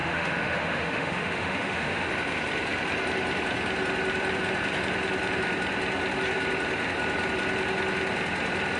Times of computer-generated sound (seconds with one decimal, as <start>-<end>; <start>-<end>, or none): 0.0-2.1